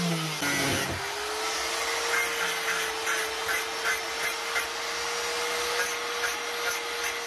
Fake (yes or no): no